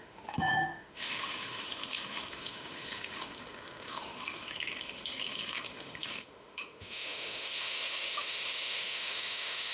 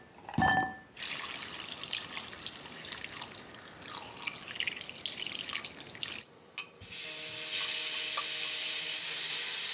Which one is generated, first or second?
first